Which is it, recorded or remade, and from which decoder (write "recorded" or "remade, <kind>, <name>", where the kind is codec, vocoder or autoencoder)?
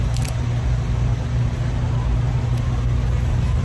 recorded